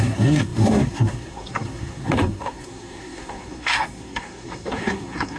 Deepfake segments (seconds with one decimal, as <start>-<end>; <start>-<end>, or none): 0.0-5.4